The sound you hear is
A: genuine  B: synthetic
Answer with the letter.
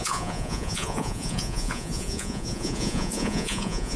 B